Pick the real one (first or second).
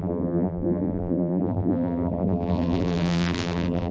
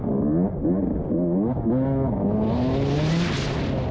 second